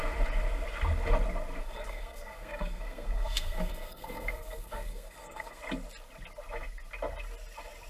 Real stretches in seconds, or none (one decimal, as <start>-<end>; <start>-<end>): 0.0-1.6; 5.6-7.9